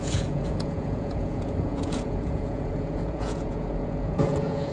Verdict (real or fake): fake